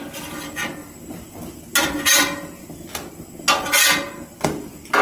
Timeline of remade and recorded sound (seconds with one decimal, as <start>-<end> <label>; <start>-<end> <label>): 0.0-5.0 recorded